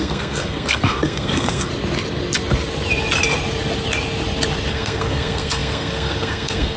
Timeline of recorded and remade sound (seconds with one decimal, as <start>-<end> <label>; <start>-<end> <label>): 0.0-1.7 remade; 1.7-4.7 recorded; 4.7-6.8 remade